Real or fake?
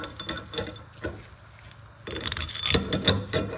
real